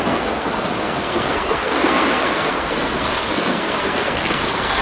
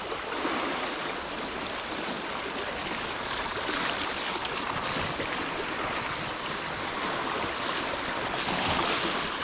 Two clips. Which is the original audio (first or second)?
second